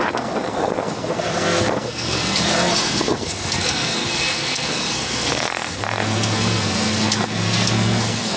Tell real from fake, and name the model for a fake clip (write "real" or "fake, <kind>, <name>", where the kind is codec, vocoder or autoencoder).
fake, codec, SNAC